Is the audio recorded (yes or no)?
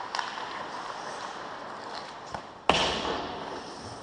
yes